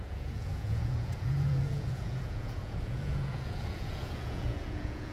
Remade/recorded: remade